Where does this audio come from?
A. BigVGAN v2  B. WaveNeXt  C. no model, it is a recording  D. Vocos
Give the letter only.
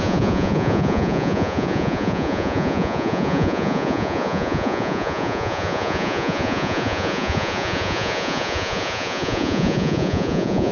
D